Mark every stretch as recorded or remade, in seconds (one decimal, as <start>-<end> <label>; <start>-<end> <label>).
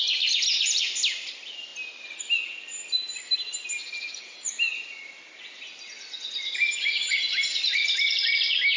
0.0-1.7 remade; 1.7-2.2 recorded; 2.2-8.8 remade